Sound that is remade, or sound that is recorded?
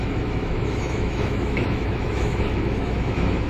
remade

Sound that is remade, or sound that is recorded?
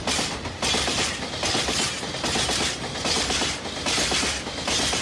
recorded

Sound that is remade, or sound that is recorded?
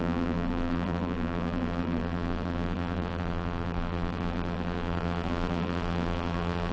remade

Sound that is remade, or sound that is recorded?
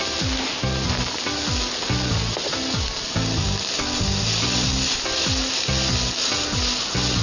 recorded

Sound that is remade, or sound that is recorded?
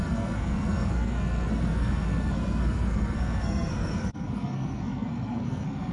remade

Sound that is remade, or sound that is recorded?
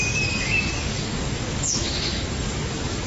remade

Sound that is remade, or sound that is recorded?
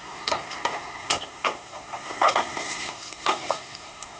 remade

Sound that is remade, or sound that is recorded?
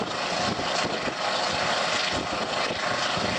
recorded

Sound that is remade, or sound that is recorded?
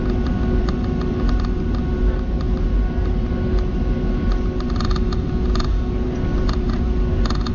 recorded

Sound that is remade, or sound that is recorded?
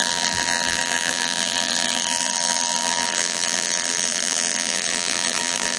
remade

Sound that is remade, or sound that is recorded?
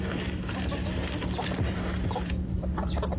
remade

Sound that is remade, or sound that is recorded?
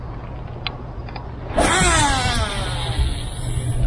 recorded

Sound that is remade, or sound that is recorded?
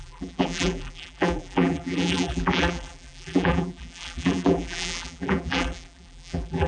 remade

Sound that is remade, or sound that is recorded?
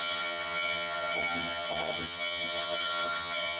remade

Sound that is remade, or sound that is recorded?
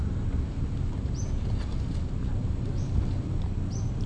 recorded